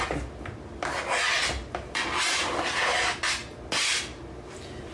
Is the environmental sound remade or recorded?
recorded